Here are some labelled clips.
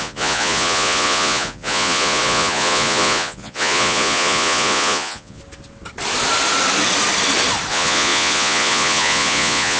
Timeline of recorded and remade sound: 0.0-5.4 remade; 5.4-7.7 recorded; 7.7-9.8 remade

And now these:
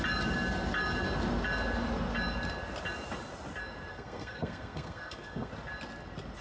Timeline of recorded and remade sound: 0.0-3.9 recorded; 3.9-5.5 remade; 5.5-6.4 recorded

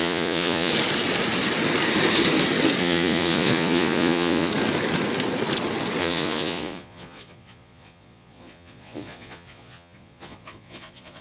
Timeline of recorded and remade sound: 0.0-0.7 remade; 0.7-2.8 recorded; 2.8-4.5 remade; 4.5-6.0 recorded; 6.0-11.2 remade

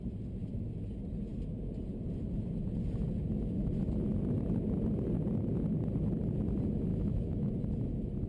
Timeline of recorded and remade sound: 0.0-6.9 recorded; 6.9-7.5 remade; 7.5-8.3 recorded

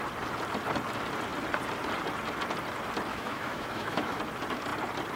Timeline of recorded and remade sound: 0.0-3.1 recorded; 3.1-4.2 remade; 4.2-5.2 recorded

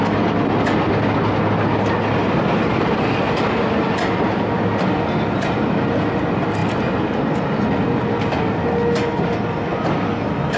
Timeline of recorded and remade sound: 0.0-10.6 recorded